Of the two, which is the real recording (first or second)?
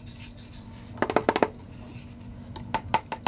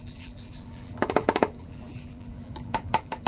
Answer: first